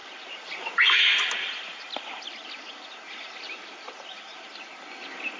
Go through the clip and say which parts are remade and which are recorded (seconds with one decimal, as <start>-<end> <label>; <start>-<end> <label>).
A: 0.0-5.4 recorded